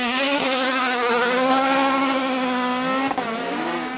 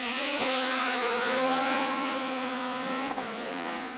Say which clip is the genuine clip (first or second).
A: first